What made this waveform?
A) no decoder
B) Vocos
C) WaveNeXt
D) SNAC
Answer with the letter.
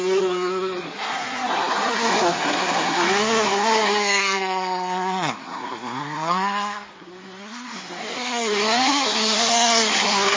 D